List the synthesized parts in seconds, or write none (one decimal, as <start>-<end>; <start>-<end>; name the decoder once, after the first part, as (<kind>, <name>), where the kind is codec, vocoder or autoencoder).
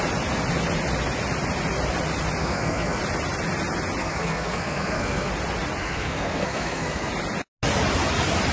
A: 2.4-3.0 (codec, SNAC); 4.0-5.3; 5.8-7.1